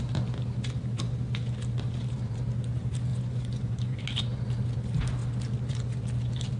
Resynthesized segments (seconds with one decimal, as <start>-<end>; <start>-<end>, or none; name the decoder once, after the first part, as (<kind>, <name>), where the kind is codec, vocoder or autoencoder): 3.1-4.0 (vocoder, Vocos)